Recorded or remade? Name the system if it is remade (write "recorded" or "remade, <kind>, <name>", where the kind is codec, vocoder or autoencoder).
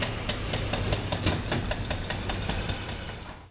recorded